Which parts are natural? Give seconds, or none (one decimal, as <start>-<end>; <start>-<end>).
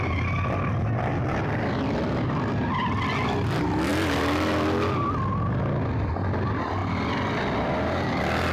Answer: 0.0-8.5